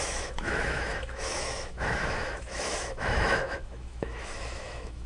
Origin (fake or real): fake